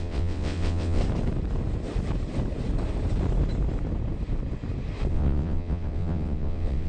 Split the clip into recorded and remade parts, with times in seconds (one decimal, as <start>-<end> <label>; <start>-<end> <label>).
0.0-1.0 remade; 1.0-5.1 recorded; 5.1-6.9 remade